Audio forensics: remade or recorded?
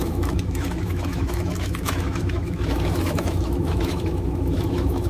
remade